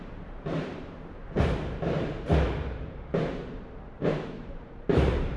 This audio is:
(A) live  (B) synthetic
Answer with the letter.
B